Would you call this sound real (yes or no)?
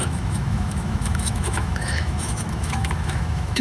no